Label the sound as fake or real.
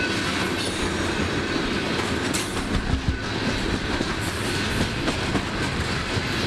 real